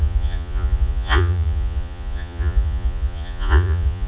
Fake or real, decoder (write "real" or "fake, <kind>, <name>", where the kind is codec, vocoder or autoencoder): fake, vocoder, Vocos